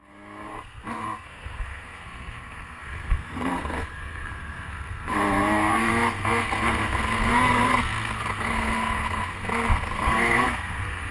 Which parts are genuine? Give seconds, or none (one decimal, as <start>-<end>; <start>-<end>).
none

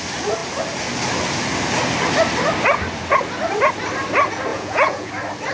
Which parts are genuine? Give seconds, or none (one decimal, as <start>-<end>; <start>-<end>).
0.0-4.5; 5.1-5.5

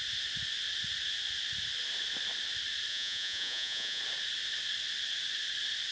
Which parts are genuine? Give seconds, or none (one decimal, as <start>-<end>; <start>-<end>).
0.0-2.9; 4.0-5.9